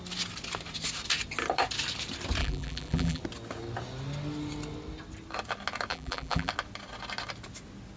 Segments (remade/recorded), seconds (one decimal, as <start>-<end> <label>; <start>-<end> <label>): 0.0-2.4 recorded; 2.4-3.2 remade; 3.2-5.9 recorded; 5.9-6.5 remade; 6.5-8.0 recorded